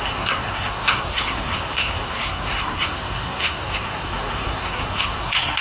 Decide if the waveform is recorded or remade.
remade